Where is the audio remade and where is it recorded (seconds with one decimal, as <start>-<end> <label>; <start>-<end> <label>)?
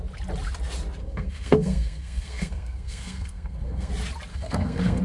0.0-1.0 recorded; 1.0-3.9 remade; 3.9-4.3 recorded; 4.3-5.0 remade